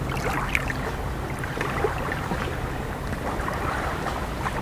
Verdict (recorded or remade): recorded